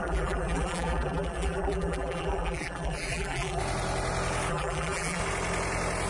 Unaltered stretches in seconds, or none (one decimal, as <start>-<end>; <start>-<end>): 3.6-4.5; 5.2-6.1